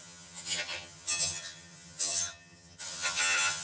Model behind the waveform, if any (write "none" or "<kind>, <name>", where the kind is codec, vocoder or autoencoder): vocoder, HiFi-GAN